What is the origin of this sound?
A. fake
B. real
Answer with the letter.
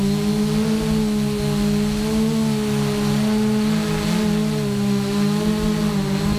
B